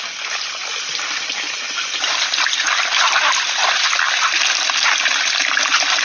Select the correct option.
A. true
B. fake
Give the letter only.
A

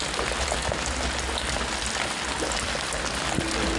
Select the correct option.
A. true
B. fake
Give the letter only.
A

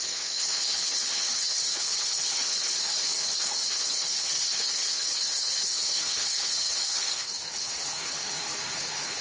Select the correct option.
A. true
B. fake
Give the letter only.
B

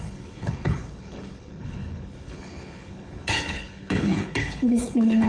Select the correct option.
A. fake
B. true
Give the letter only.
A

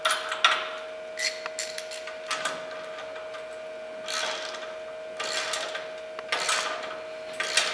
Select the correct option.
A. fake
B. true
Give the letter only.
B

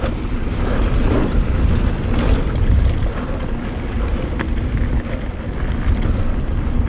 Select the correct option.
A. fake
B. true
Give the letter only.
B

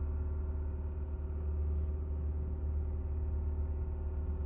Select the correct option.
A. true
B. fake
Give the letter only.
A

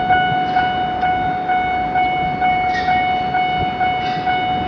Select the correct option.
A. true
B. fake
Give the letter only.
A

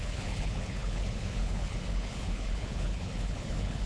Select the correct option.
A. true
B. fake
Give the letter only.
B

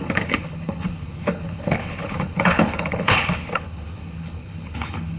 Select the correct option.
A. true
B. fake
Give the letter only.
B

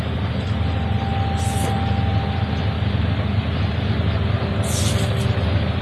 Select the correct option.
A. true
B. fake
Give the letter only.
A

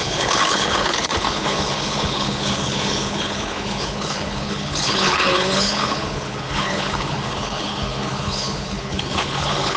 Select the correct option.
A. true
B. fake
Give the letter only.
B